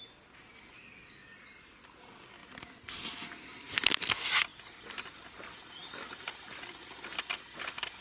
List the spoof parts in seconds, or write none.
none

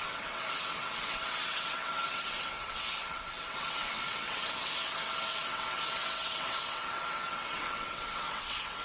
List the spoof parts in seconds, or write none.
0.0-8.8 (vocoder, WaveNeXt)

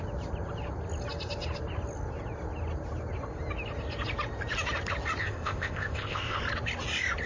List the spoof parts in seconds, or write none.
5.2-6.4 (codec, ZipCodec)

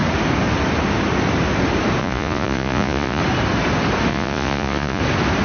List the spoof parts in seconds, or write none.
2.0-3.2 (vocoder, Vocos); 4.1-5.0

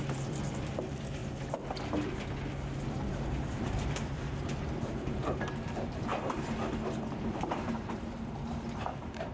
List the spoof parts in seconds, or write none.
0.0-1.2 (vocoder, BigVGAN v2); 2.9-6.1; 7.7-9.3